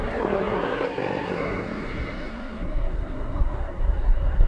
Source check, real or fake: fake